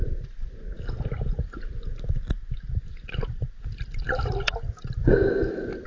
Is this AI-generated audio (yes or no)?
no